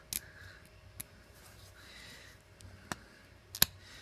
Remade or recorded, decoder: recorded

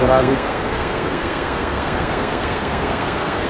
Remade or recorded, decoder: remade, codec, SNAC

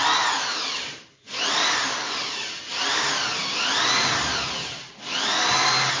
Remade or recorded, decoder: recorded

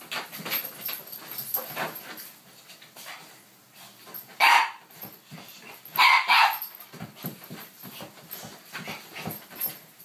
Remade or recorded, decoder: recorded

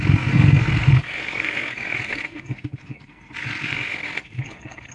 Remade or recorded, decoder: remade, codec, SNAC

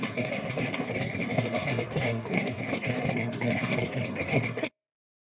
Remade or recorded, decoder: remade, codec, SNAC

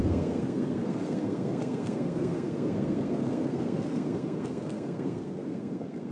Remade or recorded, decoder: remade, codec, SNAC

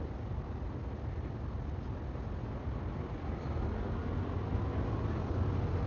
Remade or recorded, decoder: recorded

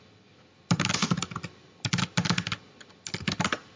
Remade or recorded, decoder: recorded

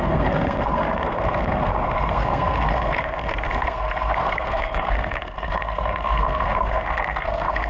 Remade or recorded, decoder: remade, codec, SNAC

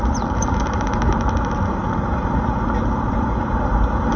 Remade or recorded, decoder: recorded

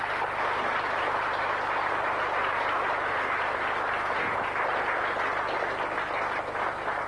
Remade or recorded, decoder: recorded